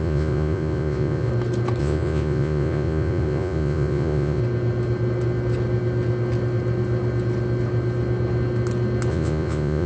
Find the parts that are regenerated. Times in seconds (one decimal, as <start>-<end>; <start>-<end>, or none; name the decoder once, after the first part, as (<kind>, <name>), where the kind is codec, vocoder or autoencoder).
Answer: 0.0-1.3 (vocoder, Vocos); 1.8-4.4; 9.1-9.9

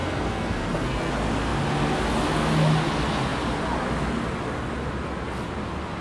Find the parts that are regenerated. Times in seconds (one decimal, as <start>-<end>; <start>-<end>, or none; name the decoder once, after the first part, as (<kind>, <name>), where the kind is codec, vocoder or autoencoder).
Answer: 0.0-1.1 (codec, SNAC)

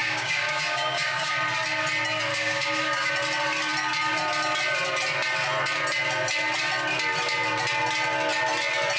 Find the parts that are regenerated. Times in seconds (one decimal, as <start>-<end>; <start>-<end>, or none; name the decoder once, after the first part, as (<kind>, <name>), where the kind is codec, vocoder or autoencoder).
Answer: 0.0-1.3 (codec, DAC); 2.3-3.1

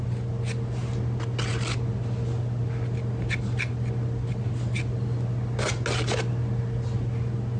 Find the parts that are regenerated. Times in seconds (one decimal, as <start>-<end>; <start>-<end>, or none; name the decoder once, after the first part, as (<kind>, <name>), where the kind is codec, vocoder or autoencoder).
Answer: none

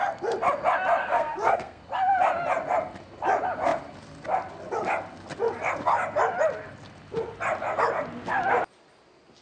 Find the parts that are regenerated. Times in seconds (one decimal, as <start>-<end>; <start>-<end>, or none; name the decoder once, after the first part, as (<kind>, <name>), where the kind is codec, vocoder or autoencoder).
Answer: 1.0-1.8 (codec, SNAC)

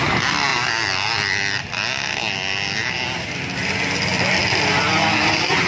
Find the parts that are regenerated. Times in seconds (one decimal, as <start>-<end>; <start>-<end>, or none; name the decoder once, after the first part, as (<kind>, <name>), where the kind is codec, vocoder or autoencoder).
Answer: none

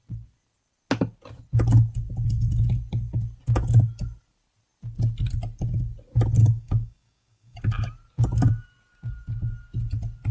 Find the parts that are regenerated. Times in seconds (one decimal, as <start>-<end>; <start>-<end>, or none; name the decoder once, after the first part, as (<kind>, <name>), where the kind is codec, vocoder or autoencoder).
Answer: 6.4-7.6 (codec, DAC)